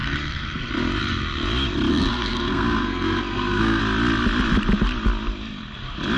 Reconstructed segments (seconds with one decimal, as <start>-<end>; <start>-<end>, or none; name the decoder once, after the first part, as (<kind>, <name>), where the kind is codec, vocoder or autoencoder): 0.0-0.7 (codec, SNAC); 1.9-3.8